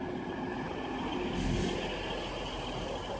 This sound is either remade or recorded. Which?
recorded